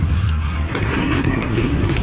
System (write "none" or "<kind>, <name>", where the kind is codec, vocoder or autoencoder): codec, SNAC